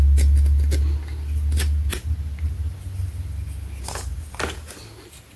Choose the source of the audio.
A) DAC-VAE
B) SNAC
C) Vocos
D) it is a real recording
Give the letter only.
D